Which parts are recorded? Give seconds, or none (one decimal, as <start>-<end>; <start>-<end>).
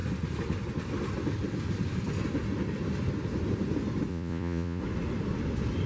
0.0-4.1; 4.8-5.9